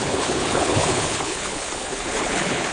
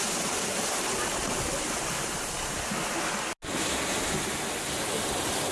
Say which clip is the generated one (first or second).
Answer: first